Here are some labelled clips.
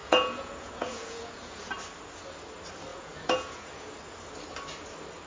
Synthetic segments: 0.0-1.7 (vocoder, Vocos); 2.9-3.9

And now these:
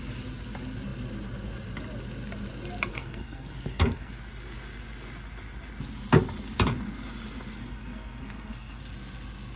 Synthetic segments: 2.9-4.1 (codec, SNAC); 7.6-8.8

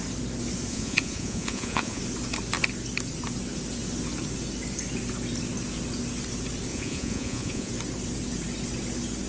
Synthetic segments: 0.7-2.0 (vocoder, Vocos); 6.7-7.7

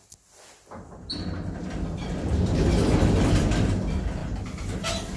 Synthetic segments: none

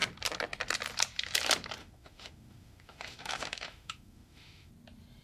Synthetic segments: 1.8-4.7 (autoencoder, DAC-VAE)